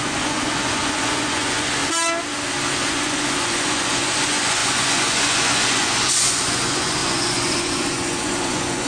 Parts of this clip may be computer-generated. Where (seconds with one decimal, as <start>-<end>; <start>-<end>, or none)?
0.0-1.8; 2.9-8.9